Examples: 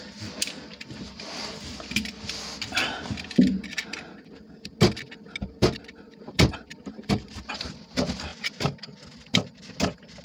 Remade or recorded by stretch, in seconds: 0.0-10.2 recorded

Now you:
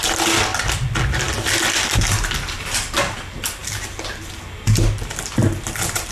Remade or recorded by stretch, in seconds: 0.0-6.1 remade

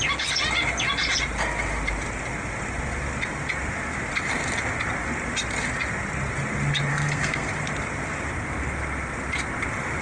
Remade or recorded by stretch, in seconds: 0.0-6.9 recorded; 6.9-7.5 remade; 7.5-10.0 recorded

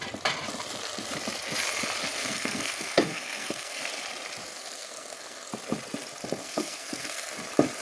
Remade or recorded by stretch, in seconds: 0.0-2.2 recorded; 2.2-3.8 remade; 3.8-4.5 recorded; 4.5-5.5 remade; 5.5-6.4 recorded; 6.4-7.3 remade; 7.3-7.8 recorded